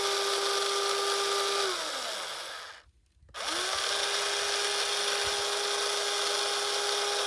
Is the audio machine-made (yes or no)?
no